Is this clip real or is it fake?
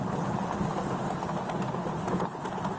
real